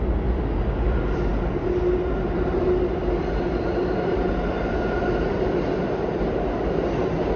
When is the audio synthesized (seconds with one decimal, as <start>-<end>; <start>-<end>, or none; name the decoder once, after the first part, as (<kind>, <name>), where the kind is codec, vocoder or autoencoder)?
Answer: none